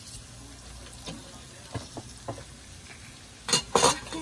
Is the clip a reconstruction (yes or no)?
no